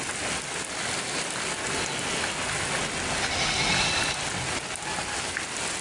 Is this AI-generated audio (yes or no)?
no